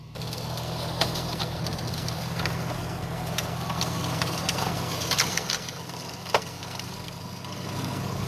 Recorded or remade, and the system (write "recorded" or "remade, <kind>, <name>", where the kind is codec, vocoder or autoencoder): remade, codec, SNAC